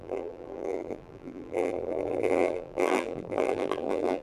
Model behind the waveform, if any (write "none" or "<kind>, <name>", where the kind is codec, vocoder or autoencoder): vocoder, BigVGAN v2